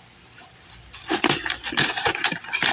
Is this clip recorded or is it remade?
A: recorded